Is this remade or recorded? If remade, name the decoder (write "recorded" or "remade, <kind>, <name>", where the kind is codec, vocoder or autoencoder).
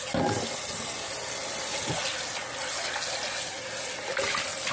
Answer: recorded